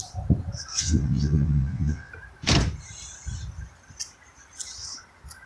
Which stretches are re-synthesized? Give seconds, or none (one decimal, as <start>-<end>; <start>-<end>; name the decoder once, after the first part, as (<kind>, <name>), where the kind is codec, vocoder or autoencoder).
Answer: 0.7-2.1 (vocoder, WaveNeXt)